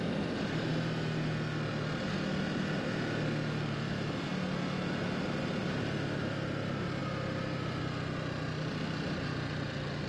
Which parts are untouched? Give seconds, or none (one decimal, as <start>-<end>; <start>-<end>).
0.0-10.1

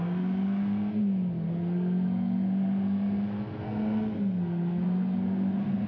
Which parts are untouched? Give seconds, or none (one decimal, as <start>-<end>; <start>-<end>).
1.0-1.5